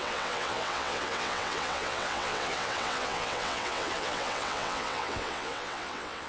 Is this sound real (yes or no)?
no